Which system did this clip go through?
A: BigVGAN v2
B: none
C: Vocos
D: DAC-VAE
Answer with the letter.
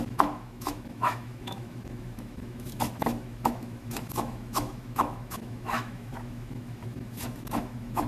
D